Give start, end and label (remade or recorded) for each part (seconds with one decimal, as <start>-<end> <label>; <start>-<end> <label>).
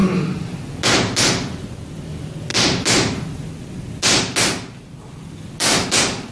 0.0-6.3 recorded